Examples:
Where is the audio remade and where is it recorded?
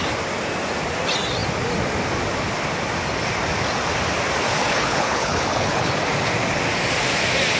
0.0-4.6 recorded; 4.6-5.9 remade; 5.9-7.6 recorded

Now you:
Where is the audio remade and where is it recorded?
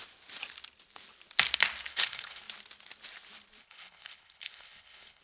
0.0-1.9 recorded; 1.9-2.4 remade; 2.4-3.6 recorded; 3.6-5.2 remade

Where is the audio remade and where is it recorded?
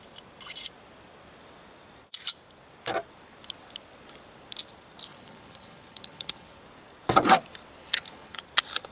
0.0-5.1 recorded; 5.1-6.6 remade; 6.6-7.8 recorded; 7.8-8.4 remade; 8.4-8.9 recorded